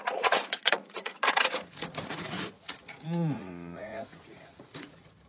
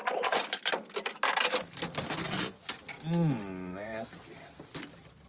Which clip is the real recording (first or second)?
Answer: second